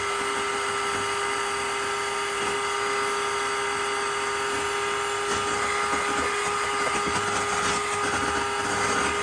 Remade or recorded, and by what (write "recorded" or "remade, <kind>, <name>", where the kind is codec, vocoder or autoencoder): recorded